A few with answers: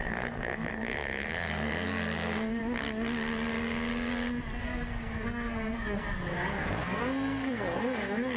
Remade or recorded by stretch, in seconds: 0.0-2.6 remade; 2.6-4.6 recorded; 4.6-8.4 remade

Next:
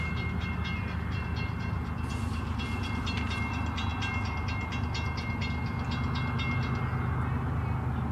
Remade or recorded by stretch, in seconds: 0.0-8.1 recorded

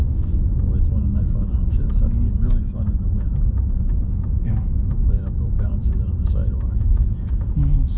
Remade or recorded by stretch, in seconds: 0.0-3.3 remade; 3.3-4.4 recorded; 4.4-8.0 remade

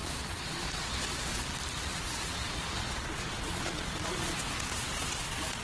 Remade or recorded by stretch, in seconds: 0.0-1.4 remade; 1.4-1.9 recorded; 1.9-5.6 remade

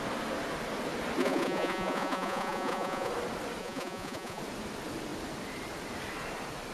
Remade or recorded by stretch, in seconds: 0.0-1.2 recorded; 1.2-3.1 remade; 3.1-3.6 recorded; 3.6-4.4 remade; 4.4-6.7 recorded